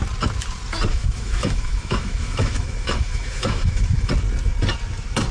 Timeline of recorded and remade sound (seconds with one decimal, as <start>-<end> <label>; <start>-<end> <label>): 0.0-0.9 recorded; 0.9-4.1 remade; 4.1-5.3 recorded